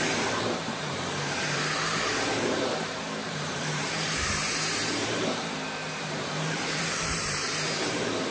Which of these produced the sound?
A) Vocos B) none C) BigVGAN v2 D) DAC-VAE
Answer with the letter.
C